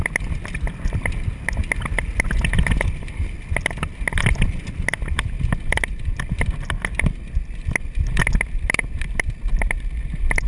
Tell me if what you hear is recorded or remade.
recorded